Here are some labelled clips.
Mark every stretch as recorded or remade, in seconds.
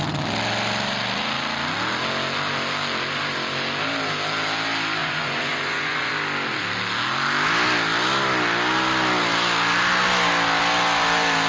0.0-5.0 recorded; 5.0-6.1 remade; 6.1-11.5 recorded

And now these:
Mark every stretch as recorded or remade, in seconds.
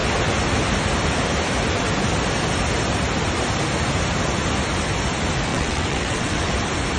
0.0-5.5 recorded; 5.5-6.5 remade; 6.5-7.0 recorded